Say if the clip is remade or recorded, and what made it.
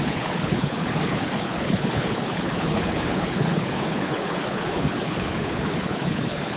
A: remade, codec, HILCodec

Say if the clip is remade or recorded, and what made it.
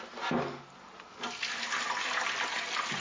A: recorded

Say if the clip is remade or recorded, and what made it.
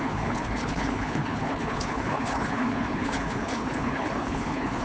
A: remade, codec, HILCodec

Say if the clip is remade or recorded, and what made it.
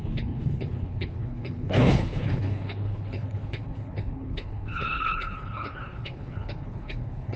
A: remade, codec, HILCodec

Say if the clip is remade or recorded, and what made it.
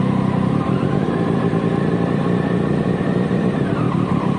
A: recorded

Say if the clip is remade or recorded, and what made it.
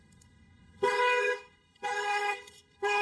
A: remade, codec, HILCodec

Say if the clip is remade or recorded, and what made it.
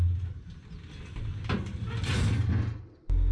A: recorded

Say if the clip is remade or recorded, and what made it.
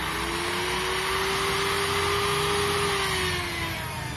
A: recorded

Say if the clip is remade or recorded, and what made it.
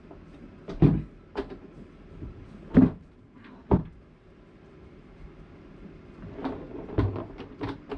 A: recorded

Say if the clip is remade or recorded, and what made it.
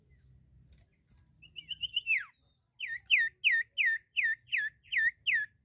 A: recorded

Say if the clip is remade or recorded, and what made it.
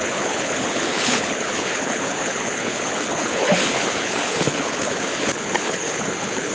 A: remade, codec, HILCodec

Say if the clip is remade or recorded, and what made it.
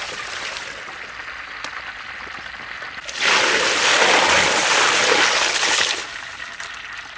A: recorded